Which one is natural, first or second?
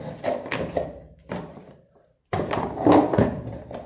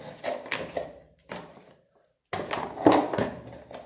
second